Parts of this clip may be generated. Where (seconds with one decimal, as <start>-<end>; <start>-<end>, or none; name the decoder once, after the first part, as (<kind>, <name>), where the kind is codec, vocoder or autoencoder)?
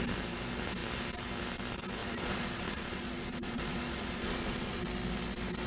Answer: 2.0-4.8 (vocoder, Vocos)